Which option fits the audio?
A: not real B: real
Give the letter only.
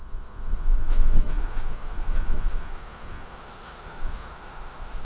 A